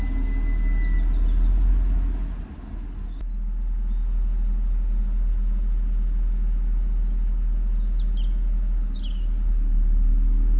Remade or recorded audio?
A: recorded